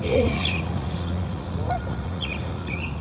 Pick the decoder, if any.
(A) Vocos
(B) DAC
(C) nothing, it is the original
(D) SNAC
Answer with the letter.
A